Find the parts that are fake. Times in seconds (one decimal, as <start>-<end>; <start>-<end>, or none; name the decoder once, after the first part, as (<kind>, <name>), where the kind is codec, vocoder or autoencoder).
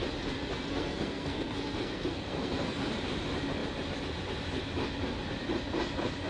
0.7-2.9 (codec, SNAC)